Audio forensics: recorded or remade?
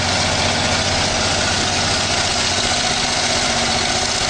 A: remade